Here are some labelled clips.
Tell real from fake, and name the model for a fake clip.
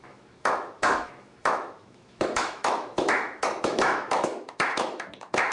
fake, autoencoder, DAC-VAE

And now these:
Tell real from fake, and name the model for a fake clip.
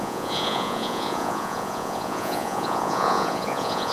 fake, vocoder, Vocos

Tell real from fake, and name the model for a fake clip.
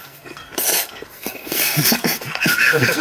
fake, codec, SNAC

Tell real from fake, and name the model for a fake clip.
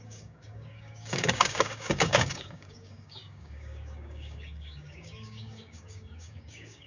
fake, codec, DAC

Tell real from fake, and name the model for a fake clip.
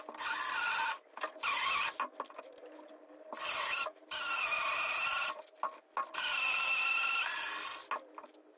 real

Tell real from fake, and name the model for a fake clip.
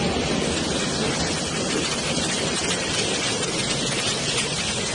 real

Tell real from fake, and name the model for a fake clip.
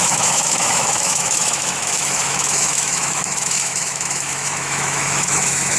fake, autoencoder, DAC-VAE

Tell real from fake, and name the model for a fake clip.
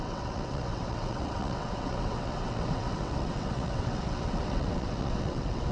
fake, vocoder, WaveNeXt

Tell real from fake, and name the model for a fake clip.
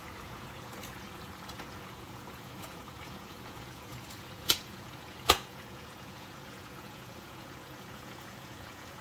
fake, vocoder, Vocos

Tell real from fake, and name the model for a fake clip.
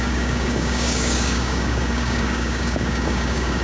fake, codec, DAC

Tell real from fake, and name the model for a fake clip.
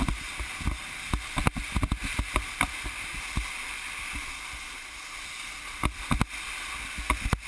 real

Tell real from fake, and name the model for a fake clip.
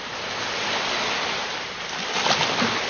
real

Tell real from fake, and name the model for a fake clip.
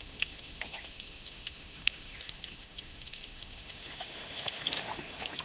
fake, autoencoder, DAC-VAE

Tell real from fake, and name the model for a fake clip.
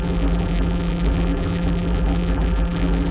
fake, vocoder, BigVGAN v2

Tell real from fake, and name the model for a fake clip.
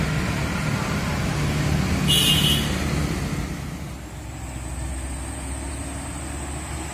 real